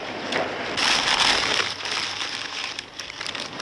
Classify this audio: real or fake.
real